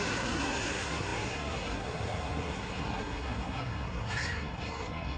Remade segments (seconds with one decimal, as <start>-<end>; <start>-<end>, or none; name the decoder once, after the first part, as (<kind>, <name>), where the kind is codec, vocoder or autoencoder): 0.0-5.2 (codec, SNAC)